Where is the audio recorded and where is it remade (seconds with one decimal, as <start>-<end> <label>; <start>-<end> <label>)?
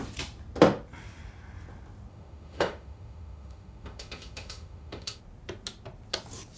0.0-2.1 recorded; 2.1-5.2 remade; 5.2-6.6 recorded